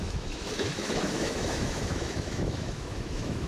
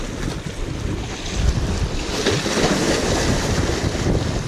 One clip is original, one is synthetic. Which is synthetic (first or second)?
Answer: first